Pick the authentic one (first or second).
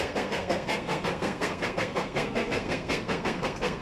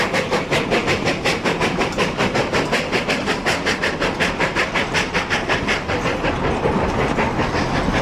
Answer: second